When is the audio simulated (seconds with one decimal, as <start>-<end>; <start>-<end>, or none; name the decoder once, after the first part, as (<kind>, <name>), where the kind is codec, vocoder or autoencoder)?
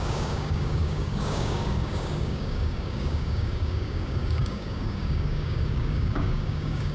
0.0-6.9 (codec, DAC)